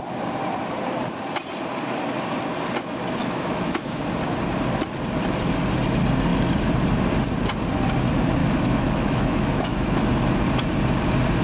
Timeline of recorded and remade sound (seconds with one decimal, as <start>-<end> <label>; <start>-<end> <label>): 0.0-3.2 recorded; 3.2-4.0 remade; 4.0-8.4 recorded; 8.4-10.1 remade; 10.1-11.4 recorded